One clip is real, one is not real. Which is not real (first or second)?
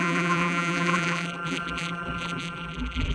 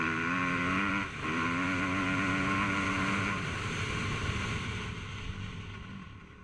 first